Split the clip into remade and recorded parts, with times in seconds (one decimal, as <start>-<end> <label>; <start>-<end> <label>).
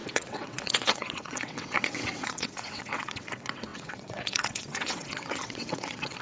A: 0.0-6.2 remade